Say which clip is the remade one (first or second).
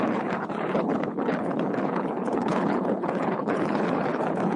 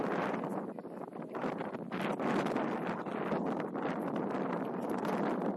first